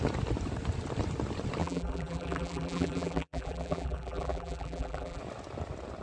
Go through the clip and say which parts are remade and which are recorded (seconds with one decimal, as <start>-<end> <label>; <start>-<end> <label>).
0.0-1.6 recorded; 1.6-5.2 remade; 5.2-6.0 recorded